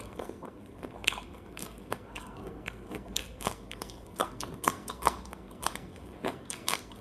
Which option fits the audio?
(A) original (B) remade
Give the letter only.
B